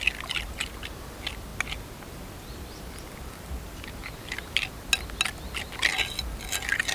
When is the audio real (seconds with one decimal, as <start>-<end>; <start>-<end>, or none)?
0.0-6.9

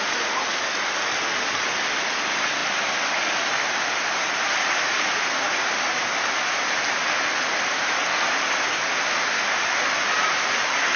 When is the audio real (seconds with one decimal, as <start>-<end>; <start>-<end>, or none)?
0.0-11.0

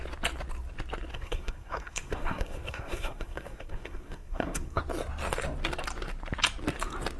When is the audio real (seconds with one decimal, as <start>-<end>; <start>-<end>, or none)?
0.0-1.1; 4.8-7.2

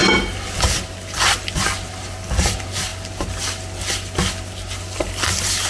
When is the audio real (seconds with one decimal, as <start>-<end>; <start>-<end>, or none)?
0.0-5.7

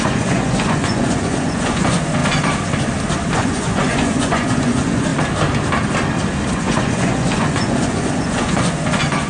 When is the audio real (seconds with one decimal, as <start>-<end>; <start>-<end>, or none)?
2.2-3.3; 5.1-6.5

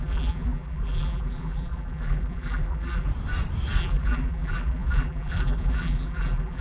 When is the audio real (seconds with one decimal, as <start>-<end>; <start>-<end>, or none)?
3.1-3.8